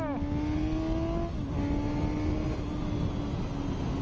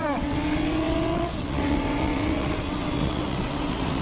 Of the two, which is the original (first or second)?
first